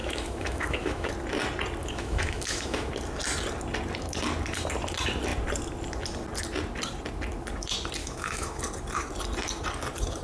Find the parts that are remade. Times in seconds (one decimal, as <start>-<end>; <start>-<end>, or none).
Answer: 0.0-1.1; 1.8-2.9; 8.0-8.6